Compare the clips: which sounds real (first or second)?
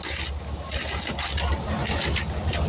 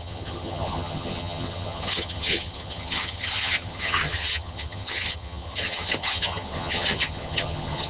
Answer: first